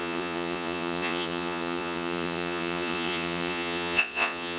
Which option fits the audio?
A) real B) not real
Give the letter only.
B